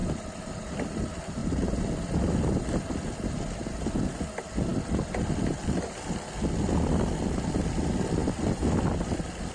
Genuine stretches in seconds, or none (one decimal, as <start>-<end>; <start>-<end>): 0.0-9.5